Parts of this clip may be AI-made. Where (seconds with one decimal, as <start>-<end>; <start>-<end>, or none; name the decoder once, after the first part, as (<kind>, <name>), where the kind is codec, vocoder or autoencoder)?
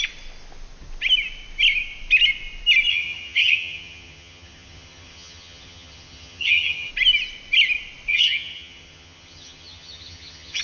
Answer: 2.9-6.9 (vocoder, HiFi-GAN); 8.1-10.6